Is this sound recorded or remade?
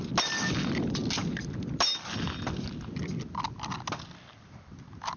recorded